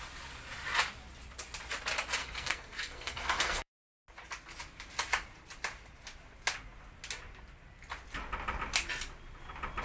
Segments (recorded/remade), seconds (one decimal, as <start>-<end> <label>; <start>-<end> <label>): 0.0-2.2 recorded; 2.2-3.7 remade; 3.7-9.8 recorded